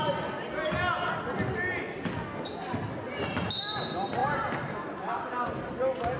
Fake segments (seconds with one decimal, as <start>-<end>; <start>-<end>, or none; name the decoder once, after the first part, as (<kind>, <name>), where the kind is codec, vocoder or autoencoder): 4.2-5.7 (vocoder, BigVGAN v2)